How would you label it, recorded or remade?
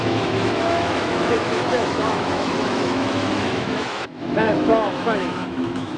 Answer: remade